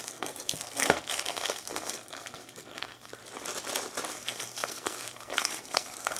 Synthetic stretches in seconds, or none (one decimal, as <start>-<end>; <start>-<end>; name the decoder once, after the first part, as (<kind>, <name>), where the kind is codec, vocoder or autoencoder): 0.0-3.2 (codec, SNAC); 4.1-6.2